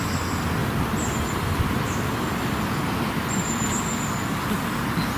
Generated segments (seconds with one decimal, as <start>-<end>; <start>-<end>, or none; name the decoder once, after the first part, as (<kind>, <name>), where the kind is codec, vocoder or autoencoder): none